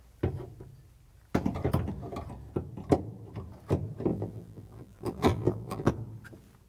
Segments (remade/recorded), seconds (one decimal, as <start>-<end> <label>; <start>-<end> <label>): 0.0-4.1 recorded; 4.1-5.9 remade; 5.9-6.7 recorded